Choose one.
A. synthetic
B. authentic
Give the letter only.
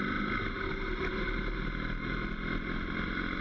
B